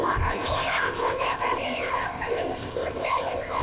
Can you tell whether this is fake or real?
fake